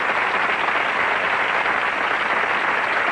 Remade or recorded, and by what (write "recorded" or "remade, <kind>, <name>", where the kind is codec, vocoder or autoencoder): recorded